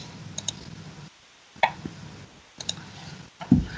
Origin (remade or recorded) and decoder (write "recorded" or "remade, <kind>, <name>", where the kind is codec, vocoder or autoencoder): recorded